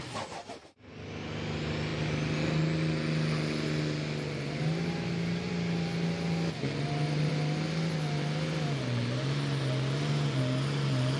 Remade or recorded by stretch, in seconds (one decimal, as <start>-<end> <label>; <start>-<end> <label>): 0.0-11.2 recorded